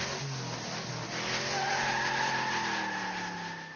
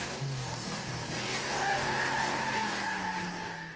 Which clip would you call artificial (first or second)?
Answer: second